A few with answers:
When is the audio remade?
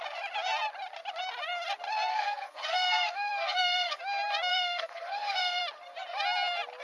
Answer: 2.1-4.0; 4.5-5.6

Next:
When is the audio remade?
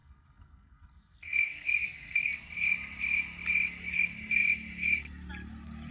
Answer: 0.0-2.5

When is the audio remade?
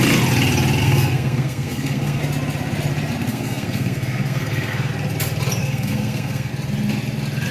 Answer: 0.8-2.2; 3.3-4.9; 5.6-6.5